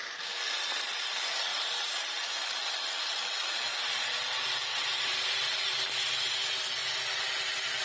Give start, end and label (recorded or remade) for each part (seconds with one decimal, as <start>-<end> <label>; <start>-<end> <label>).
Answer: 0.0-1.5 recorded; 1.5-2.3 remade; 2.3-4.7 recorded; 4.7-6.0 remade; 6.0-7.8 recorded